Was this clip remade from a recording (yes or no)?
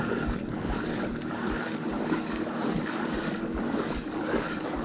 yes